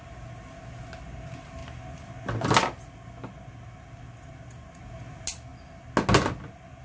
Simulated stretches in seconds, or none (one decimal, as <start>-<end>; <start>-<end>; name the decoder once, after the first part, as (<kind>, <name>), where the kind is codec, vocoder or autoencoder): none